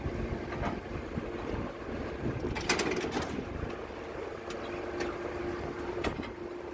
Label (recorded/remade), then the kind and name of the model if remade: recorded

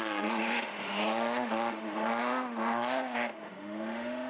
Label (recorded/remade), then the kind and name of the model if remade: remade, autoencoder, DAC-VAE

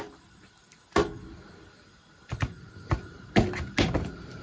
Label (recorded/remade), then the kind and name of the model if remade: recorded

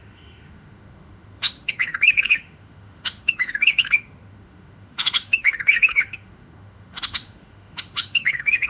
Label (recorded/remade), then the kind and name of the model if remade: remade, autoencoder, DAC-VAE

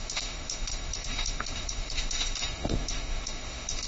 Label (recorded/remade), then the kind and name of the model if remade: remade, autoencoder, DAC-VAE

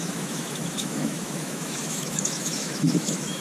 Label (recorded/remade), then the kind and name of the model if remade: remade, autoencoder, DAC-VAE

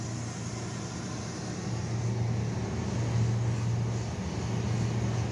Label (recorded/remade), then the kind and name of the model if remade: recorded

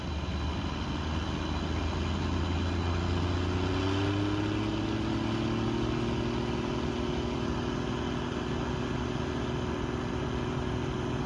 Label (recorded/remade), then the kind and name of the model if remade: recorded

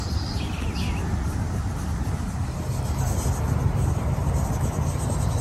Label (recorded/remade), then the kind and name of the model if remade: recorded